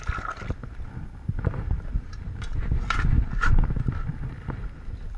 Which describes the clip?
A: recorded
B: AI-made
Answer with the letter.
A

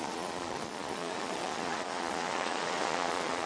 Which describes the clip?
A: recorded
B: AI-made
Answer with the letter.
B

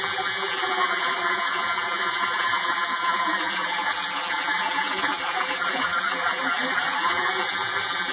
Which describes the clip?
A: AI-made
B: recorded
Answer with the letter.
A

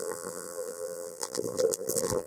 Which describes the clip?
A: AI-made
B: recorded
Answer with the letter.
A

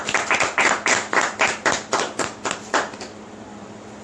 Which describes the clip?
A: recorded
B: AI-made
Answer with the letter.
A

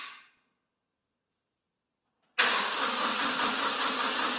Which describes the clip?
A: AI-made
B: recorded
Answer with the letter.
B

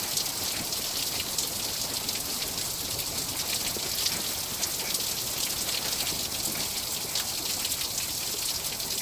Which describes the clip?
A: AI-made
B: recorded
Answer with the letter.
B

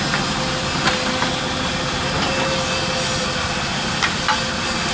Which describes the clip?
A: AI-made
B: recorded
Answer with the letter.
B